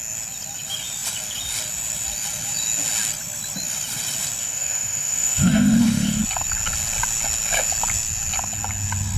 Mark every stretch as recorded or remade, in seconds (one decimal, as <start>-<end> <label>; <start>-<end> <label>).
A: 0.0-4.4 recorded; 4.4-6.2 remade; 6.2-9.2 recorded